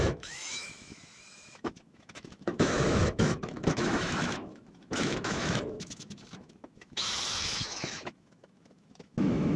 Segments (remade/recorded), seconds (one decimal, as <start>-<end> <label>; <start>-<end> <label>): 0.0-9.6 remade